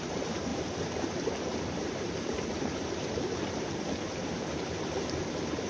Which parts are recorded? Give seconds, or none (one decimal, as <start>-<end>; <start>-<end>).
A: none